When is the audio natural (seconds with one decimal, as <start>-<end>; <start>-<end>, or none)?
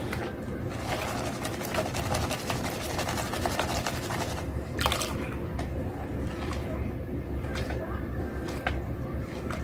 0.0-9.6